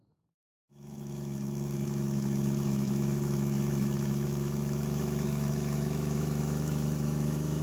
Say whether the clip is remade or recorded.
remade